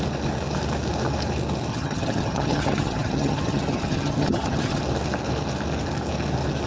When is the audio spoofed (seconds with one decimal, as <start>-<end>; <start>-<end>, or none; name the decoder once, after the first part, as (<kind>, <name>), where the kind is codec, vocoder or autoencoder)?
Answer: 1.7-4.8 (vocoder, HiFi-GAN)